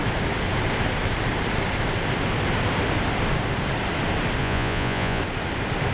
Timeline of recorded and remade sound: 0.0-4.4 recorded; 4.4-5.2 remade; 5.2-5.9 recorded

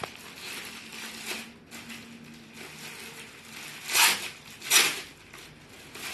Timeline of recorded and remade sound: 0.0-6.1 recorded

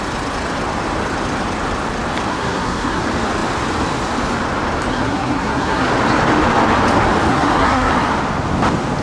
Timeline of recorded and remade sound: 0.0-2.3 recorded; 2.3-3.0 remade; 3.0-4.9 recorded; 4.9-5.9 remade; 5.9-7.3 recorded; 7.3-7.9 remade; 7.9-9.0 recorded

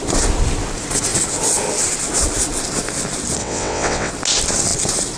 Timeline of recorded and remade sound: 0.0-3.4 recorded; 3.4-4.1 remade; 4.1-5.2 recorded

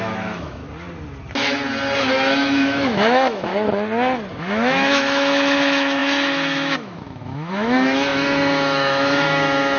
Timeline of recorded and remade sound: 0.0-0.6 remade; 0.6-2.1 recorded; 2.1-3.5 remade; 3.5-4.3 recorded; 4.3-9.8 remade